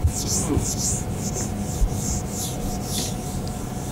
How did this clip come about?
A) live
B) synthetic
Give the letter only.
A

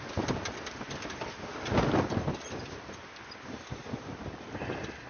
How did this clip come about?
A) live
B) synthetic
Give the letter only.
A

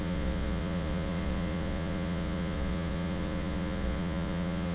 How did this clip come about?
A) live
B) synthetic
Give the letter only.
B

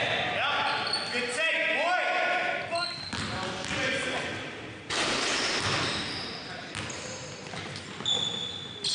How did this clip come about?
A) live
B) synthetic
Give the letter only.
A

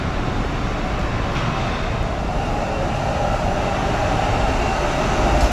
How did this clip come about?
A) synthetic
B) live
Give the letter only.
B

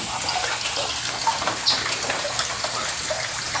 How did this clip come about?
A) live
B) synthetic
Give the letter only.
A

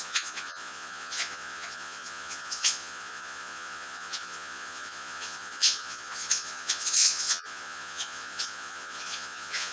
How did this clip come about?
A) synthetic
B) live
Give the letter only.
A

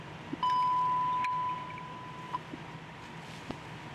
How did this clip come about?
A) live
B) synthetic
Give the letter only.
A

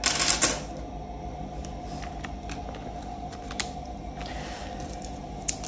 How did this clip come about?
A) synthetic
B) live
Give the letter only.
B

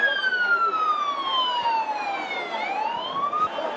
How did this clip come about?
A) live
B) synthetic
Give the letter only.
A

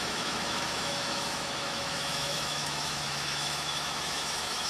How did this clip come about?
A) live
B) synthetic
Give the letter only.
B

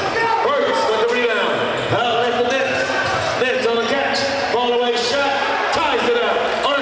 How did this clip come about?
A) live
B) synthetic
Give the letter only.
A